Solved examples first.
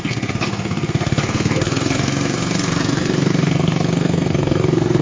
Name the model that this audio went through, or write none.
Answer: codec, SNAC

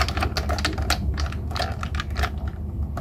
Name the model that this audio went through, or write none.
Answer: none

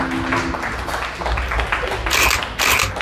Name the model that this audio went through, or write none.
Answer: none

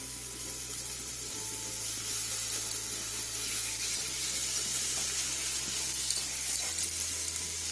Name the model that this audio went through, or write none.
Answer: none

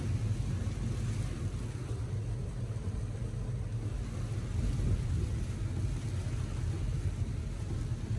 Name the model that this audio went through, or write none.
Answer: none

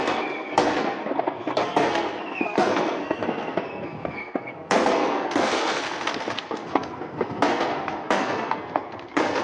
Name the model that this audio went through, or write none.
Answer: codec, SNAC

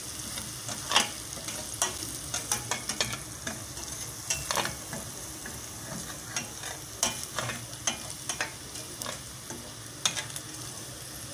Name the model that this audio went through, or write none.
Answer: none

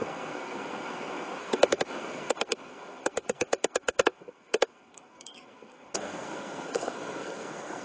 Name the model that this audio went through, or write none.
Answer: codec, SNAC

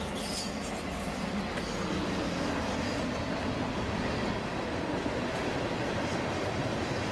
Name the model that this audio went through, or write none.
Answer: none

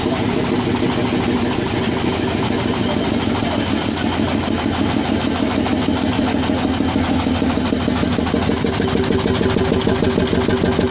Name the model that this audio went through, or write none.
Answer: none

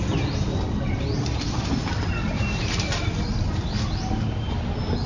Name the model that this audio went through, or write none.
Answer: none